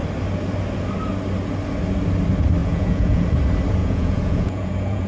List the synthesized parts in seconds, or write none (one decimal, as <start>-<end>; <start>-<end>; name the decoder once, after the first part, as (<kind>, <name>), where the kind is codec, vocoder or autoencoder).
2.6-3.3 (vocoder, Vocos); 3.8-5.1